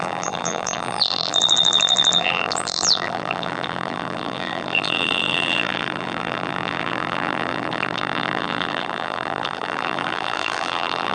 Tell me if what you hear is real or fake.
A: fake